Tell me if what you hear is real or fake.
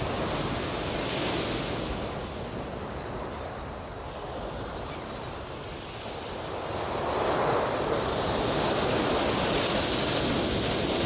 real